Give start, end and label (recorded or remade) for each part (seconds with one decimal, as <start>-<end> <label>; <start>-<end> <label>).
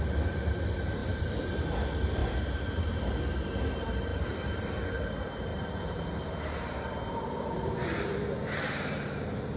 0.0-1.0 recorded; 1.0-1.7 remade; 1.7-2.2 recorded; 2.2-3.0 remade; 3.0-4.1 recorded; 4.1-4.8 remade; 4.8-5.5 recorded; 5.5-9.6 remade